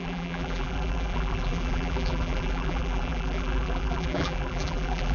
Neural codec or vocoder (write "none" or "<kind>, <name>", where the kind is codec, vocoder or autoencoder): vocoder, BigVGAN v2